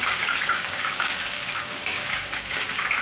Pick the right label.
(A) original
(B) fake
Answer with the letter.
B